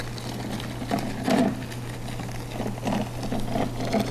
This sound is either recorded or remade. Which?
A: recorded